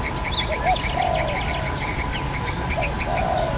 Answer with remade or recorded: recorded